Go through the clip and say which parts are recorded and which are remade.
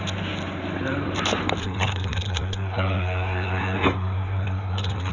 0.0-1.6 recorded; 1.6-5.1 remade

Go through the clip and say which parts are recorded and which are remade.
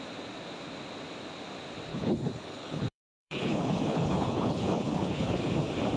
0.0-1.9 recorded; 1.9-5.5 remade; 5.5-6.0 recorded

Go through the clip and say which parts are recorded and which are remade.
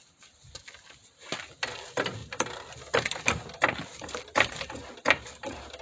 0.0-3.9 recorded; 3.9-5.8 remade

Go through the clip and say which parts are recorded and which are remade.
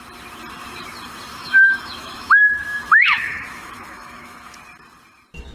0.0-1.3 recorded; 1.3-4.6 remade; 4.6-5.5 recorded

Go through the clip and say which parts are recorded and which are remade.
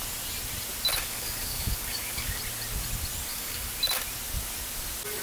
0.0-0.9 recorded; 0.9-2.4 remade; 2.4-3.3 recorded; 3.3-3.8 remade; 3.8-5.2 recorded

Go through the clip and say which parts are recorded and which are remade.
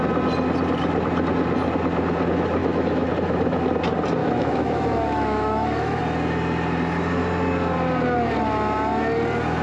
0.0-2.6 recorded; 2.6-3.1 remade; 3.1-4.2 recorded; 4.2-6.0 remade; 6.0-9.6 recorded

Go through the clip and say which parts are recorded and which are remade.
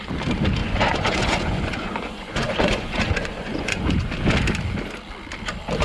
0.0-0.6 recorded; 0.6-4.1 remade; 4.1-5.8 recorded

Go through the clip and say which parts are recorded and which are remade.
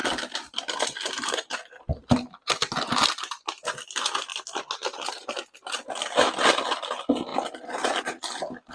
0.0-2.9 remade; 2.9-4.3 recorded; 4.3-6.3 remade; 6.3-8.7 recorded